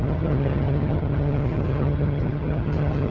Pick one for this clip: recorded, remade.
remade